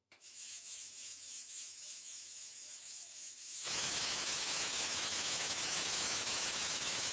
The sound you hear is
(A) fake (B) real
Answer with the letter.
A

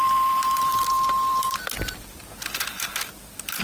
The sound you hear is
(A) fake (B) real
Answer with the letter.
B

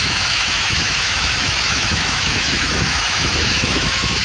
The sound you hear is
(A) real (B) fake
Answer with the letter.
B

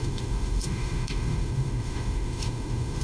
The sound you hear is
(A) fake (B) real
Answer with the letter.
A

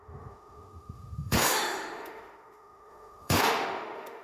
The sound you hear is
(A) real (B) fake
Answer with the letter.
B